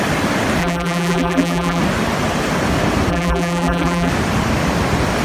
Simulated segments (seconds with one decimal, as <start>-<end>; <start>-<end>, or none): 0.6-1.8; 3.1-4.1